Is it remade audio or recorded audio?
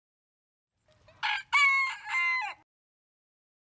recorded